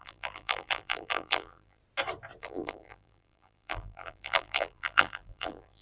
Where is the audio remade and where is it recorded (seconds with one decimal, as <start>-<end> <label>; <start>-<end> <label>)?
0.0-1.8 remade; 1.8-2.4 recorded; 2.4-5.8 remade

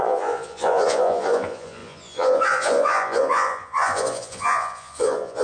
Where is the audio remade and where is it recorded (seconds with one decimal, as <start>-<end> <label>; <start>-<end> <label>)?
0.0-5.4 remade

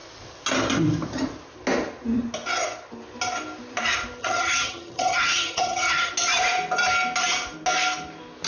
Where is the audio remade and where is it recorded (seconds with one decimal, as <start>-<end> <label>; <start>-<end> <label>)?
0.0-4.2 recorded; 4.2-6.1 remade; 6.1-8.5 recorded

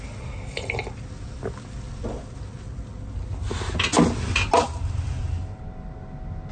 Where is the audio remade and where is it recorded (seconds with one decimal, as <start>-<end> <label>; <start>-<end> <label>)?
0.0-6.5 recorded

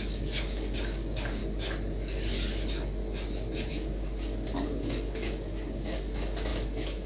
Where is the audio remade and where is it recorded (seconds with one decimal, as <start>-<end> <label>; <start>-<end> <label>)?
0.0-1.4 remade; 1.4-3.7 recorded; 3.7-7.1 remade

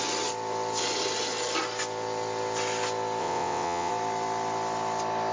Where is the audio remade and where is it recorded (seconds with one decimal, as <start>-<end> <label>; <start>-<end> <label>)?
0.0-3.2 recorded; 3.2-3.9 remade; 3.9-5.3 recorded

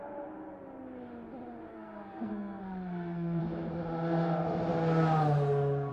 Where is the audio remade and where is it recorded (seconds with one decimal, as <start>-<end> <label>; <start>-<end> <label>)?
0.0-1.7 recorded; 1.7-3.4 remade; 3.4-5.9 recorded

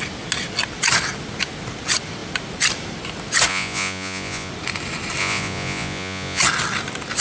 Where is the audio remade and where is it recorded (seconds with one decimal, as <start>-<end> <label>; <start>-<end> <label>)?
0.0-3.5 recorded; 3.5-4.5 remade; 4.5-5.2 recorded; 5.2-6.4 remade; 6.4-7.2 recorded